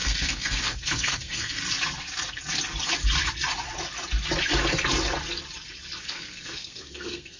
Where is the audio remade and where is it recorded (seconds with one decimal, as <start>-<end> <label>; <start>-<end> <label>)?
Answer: 0.0-1.6 remade; 1.6-6.0 recorded; 6.0-7.4 remade